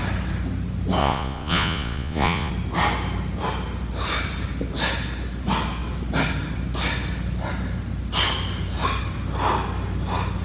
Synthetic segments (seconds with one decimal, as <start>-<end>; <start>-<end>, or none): 1.0-2.5